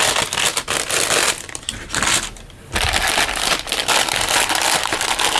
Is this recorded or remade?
recorded